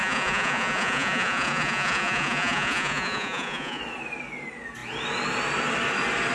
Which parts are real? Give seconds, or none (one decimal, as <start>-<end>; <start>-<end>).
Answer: 3.8-6.3